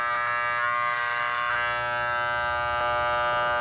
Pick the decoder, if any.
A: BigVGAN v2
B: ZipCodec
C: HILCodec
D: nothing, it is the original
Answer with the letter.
D